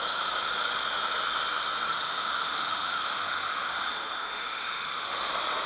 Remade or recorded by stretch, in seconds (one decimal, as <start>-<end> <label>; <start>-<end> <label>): 0.0-1.9 recorded; 1.9-5.3 remade; 5.3-5.7 recorded